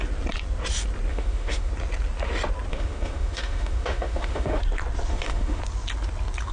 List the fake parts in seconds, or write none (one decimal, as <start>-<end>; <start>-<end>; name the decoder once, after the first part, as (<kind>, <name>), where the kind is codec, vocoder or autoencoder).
1.1-1.7 (autoencoder, DAC-VAE); 2.7-4.6; 5.1-5.6